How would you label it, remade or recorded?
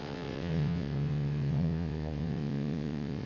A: remade